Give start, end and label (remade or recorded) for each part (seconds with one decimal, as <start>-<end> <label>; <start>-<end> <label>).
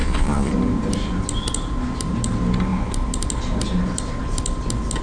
0.0-0.5 remade; 0.5-5.0 recorded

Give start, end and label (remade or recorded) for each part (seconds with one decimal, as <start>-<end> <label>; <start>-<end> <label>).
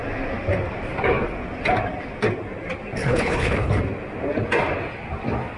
0.0-3.0 recorded; 3.0-3.7 remade; 3.7-5.6 recorded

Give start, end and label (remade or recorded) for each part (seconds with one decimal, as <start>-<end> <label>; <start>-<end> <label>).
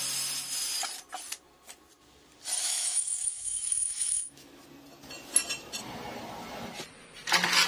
0.0-2.6 recorded; 2.6-4.6 remade; 4.6-7.7 recorded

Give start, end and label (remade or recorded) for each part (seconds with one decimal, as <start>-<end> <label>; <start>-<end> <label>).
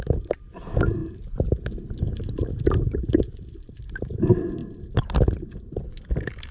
0.0-6.5 recorded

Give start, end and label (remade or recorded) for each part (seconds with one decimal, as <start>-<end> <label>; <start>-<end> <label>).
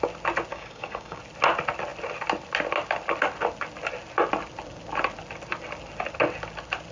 0.0-0.5 recorded; 0.5-1.2 remade; 1.2-6.9 recorded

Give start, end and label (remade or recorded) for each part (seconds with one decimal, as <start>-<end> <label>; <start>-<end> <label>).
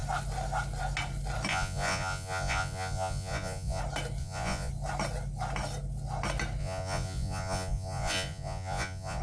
0.0-1.5 recorded; 1.5-3.8 remade; 3.8-4.2 recorded; 4.2-4.7 remade; 4.7-6.6 recorded; 6.6-9.2 remade